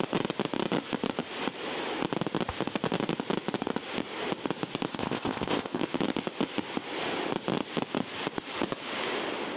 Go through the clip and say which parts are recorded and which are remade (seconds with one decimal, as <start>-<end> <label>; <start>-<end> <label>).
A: 0.0-4.9 recorded; 4.9-5.8 remade; 5.8-9.6 recorded